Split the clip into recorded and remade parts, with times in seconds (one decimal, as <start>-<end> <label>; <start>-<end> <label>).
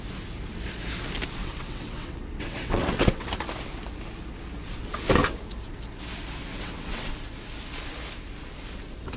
0.0-1.4 recorded; 1.4-3.3 remade; 3.3-6.5 recorded; 6.5-7.1 remade; 7.1-9.2 recorded